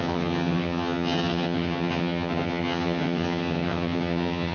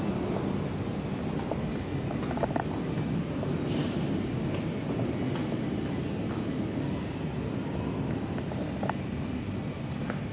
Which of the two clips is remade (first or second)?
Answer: first